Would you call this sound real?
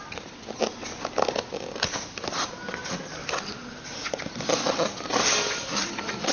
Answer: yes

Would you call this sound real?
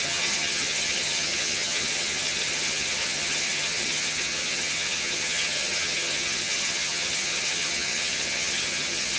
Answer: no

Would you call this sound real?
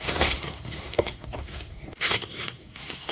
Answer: no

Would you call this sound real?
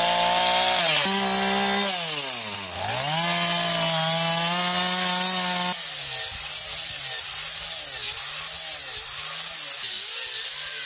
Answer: yes